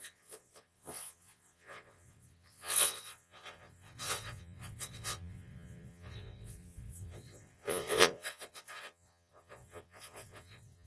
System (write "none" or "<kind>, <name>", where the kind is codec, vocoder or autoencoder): vocoder, Vocos